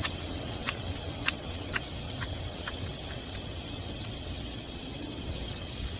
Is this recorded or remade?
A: remade